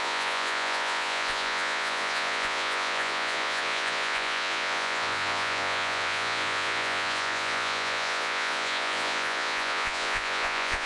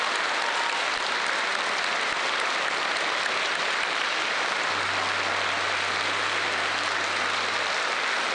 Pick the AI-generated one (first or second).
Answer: first